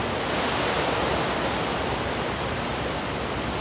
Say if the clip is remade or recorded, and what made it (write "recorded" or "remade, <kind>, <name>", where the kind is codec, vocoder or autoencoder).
recorded